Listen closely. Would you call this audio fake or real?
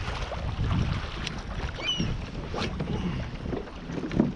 real